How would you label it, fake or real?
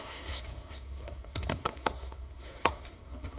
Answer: fake